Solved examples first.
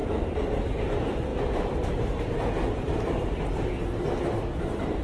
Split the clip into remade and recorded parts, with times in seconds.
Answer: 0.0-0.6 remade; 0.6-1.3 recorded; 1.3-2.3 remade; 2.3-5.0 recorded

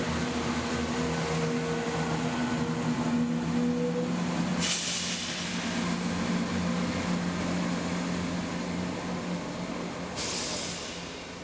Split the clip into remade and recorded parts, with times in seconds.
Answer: 0.0-11.4 recorded

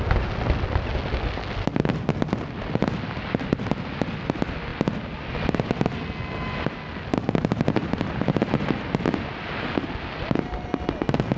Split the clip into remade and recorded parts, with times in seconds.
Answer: 0.0-7.8 recorded; 7.8-8.4 remade; 8.4-11.4 recorded